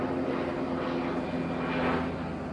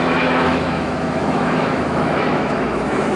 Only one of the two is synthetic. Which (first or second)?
second